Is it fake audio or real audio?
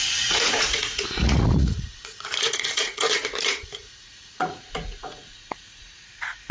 fake